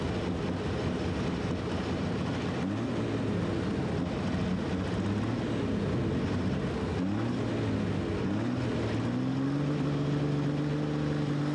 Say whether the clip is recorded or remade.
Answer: recorded